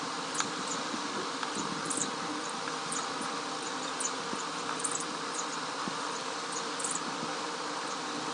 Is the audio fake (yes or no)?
yes